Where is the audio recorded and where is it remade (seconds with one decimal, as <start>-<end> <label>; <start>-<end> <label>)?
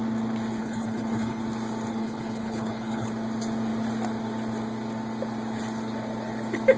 0.0-0.6 recorded; 0.6-1.4 remade; 1.4-1.9 recorded; 1.9-3.1 remade; 3.1-6.8 recorded